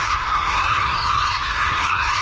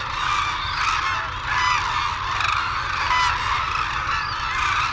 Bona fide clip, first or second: second